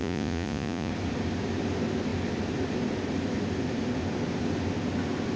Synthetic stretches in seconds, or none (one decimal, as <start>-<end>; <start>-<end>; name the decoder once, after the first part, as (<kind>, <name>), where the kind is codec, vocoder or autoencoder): 0.0-0.9 (vocoder, Vocos)